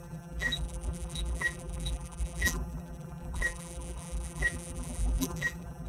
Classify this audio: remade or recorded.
remade